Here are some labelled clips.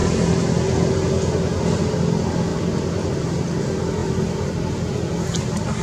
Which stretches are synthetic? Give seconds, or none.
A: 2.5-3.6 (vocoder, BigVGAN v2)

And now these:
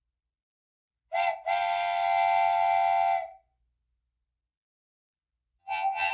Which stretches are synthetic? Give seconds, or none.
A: 5.6-6.1 (vocoder, HiFi-GAN)

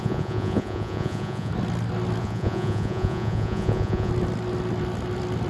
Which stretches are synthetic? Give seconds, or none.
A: 0.0-1.5 (vocoder, Vocos); 2.2-4.1

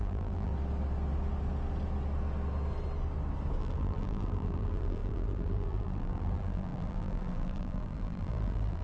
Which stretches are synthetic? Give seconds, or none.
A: 0.0-0.5 (vocoder, BigVGAN v2); 3.6-8.8